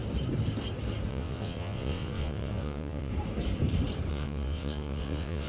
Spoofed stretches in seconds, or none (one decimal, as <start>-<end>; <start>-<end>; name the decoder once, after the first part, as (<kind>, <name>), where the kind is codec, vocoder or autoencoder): 1.1-3.1 (vocoder, WaveNeXt); 4.1-5.5